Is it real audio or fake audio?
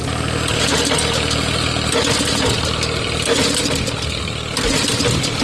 real